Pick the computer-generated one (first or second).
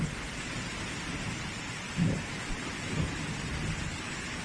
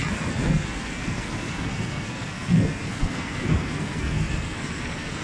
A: second